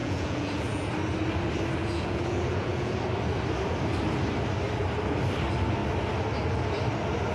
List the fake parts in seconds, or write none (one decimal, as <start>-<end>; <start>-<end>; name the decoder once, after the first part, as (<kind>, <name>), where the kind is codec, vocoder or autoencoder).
0.0-0.9 (vocoder, Vocos); 1.8-3.0

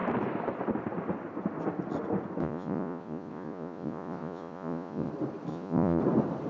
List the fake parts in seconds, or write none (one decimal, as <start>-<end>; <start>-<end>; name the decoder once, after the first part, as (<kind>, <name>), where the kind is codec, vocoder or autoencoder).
2.4-5.1 (vocoder, Vocos); 5.5-6.0

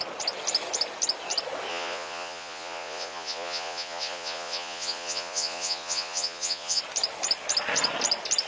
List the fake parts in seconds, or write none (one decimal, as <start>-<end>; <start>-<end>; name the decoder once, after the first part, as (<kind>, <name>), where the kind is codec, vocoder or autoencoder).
1.7-6.8 (vocoder, Vocos)

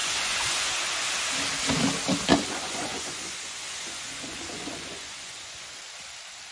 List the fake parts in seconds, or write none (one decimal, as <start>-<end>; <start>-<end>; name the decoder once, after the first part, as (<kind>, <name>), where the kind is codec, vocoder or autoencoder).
0.0-1.1 (vocoder, Vocos); 2.3-5.8